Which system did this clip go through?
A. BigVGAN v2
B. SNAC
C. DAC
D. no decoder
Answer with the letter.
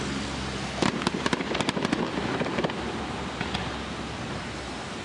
D